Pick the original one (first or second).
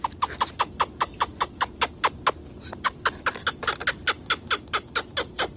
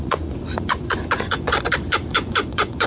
first